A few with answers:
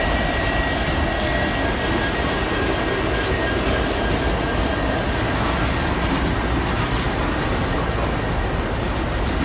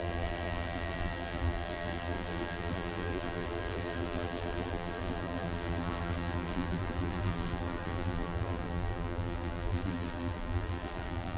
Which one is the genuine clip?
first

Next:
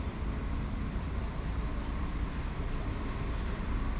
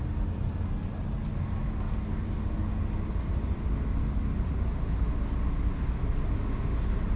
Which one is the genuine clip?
second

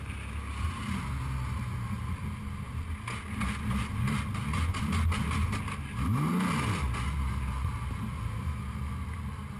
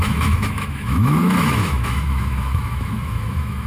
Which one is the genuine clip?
first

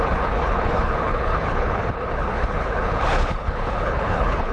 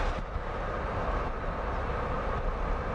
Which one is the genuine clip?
second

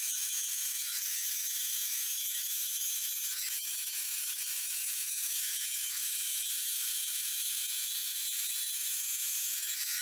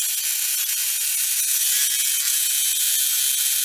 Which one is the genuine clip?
second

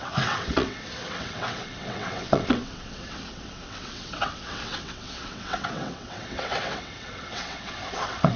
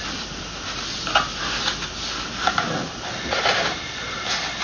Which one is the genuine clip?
second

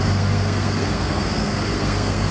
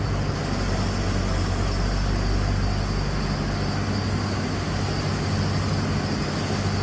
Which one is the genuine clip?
second